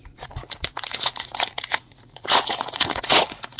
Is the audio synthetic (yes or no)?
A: yes